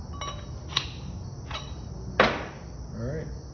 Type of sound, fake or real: real